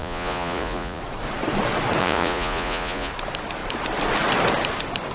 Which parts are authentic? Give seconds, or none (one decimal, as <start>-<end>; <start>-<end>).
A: 1.0-2.0; 3.1-5.1